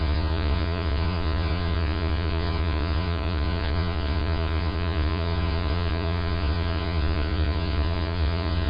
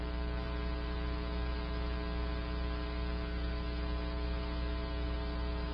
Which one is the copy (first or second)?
first